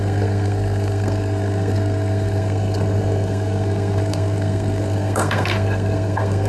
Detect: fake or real fake